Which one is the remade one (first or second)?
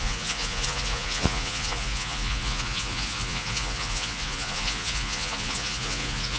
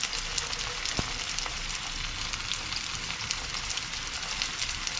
first